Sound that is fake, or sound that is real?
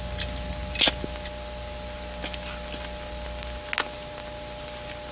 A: real